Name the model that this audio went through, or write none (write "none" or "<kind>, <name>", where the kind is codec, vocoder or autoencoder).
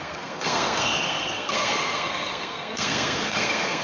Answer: codec, SNAC